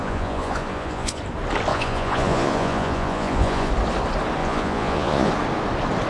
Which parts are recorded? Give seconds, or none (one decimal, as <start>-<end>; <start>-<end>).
1.2-1.7; 3.7-4.4; 5.3-6.1